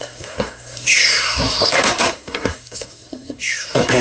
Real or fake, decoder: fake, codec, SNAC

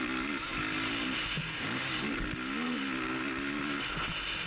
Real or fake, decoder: real